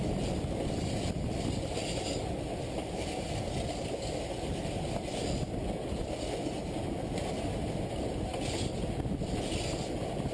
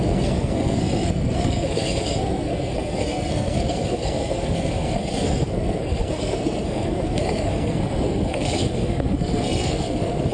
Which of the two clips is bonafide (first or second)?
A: first